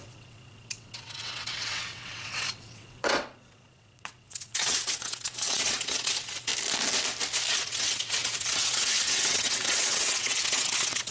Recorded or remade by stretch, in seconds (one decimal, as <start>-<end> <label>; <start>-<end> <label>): 0.0-6.5 remade; 6.5-7.5 recorded; 7.5-11.1 remade